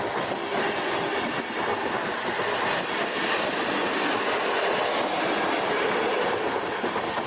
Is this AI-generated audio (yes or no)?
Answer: no